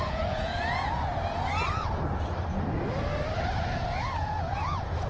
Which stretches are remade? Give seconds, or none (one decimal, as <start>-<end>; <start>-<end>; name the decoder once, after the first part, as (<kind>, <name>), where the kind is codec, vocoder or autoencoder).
0.0-1.1 (vocoder, Vocos); 4.2-5.1